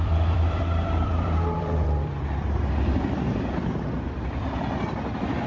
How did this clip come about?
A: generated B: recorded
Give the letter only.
A